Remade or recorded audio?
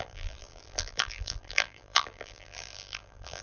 remade